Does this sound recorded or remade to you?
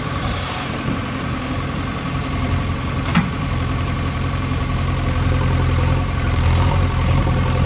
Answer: remade